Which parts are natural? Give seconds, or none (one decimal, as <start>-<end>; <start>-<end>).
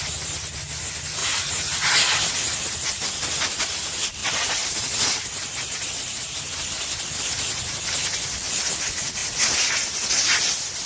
0.0-1.2; 1.9-10.9